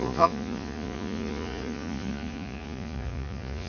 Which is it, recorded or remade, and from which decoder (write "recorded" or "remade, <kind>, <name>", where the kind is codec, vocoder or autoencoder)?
remade, vocoder, Vocos